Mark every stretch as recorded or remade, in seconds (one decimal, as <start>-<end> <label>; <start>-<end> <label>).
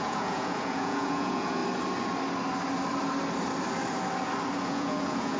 0.0-1.6 remade; 1.6-4.6 recorded; 4.6-5.4 remade